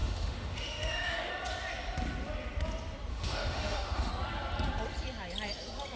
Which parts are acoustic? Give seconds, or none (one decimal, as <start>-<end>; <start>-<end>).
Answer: 1.3-3.1; 4.1-6.0